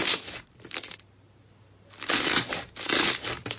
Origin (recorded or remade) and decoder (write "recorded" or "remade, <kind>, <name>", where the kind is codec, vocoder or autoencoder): recorded